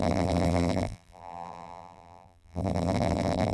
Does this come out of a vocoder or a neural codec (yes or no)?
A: yes